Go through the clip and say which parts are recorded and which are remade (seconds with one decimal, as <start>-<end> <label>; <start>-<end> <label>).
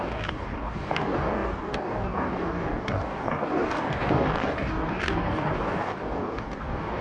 0.0-7.0 remade